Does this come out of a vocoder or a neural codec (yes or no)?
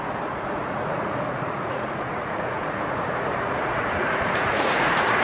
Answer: yes